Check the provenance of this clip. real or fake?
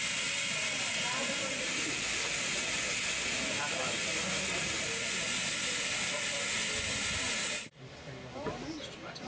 real